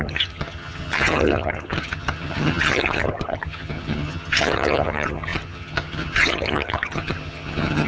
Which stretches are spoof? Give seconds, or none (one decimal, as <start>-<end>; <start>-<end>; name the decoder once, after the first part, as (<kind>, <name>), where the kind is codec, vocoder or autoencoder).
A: 0.0-7.9 (vocoder, HiFi-GAN)